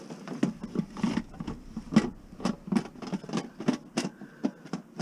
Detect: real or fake real